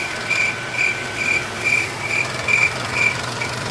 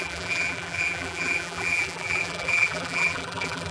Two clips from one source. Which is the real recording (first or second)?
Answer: first